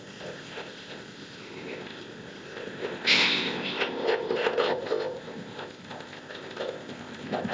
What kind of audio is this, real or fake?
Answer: fake